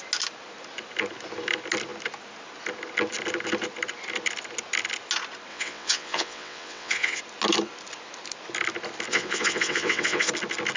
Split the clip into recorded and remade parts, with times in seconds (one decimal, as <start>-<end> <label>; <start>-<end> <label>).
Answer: 0.0-5.5 recorded; 5.5-7.2 remade; 7.2-9.1 recorded; 9.1-10.3 remade; 10.3-10.8 recorded